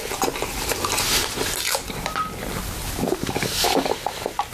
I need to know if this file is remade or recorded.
recorded